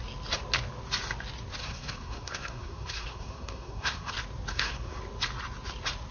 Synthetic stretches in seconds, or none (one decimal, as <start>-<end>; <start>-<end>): 1.6-4.1; 4.5-5.0

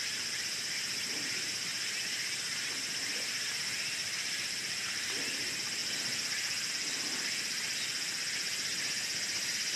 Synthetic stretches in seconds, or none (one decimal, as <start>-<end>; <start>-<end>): 4.0-5.1

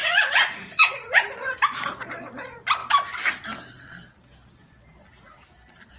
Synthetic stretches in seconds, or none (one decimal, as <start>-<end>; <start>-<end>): 0.0-1.2

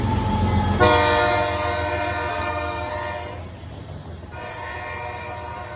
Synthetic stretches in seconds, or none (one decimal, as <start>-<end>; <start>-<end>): 2.3-2.9

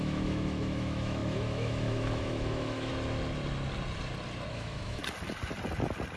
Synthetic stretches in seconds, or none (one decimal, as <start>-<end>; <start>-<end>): 0.0-2.9; 4.5-5.0